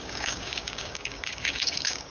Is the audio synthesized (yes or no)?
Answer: yes